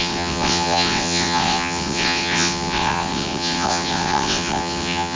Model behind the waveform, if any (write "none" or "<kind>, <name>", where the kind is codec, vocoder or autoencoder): vocoder, WaveNeXt